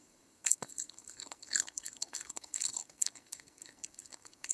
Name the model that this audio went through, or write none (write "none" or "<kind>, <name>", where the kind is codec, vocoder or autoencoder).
codec, SNAC